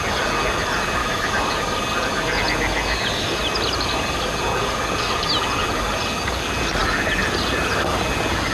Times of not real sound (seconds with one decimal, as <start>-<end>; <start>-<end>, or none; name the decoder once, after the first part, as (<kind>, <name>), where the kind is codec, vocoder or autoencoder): 1.0-1.6 (autoencoder, DAC-VAE)